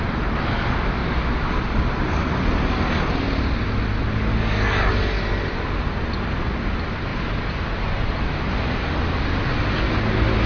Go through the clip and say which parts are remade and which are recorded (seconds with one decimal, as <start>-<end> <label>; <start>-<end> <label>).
0.0-10.5 recorded